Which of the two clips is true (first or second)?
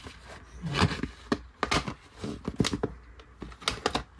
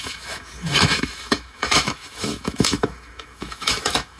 first